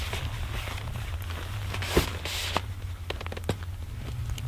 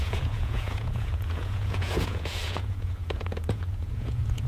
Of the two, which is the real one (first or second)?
first